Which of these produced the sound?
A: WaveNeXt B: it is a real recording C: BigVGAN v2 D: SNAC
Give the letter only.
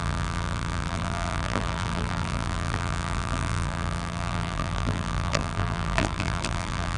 C